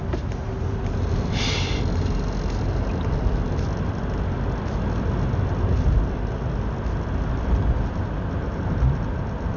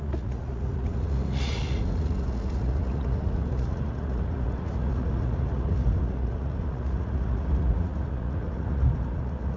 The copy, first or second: second